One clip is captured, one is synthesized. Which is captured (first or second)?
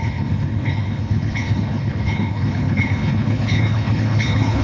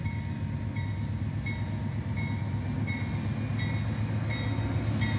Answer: second